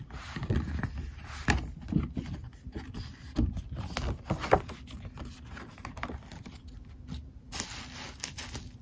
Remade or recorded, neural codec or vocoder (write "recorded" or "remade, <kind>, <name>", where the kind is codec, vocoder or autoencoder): recorded